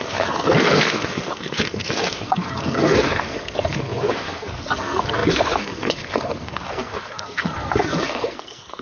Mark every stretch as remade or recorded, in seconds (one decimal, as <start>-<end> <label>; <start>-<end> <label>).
0.0-8.8 remade